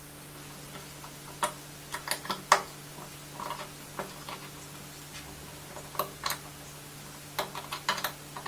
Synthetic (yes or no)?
no